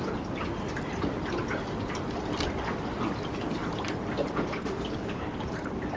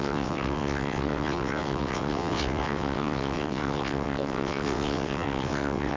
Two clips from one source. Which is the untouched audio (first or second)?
first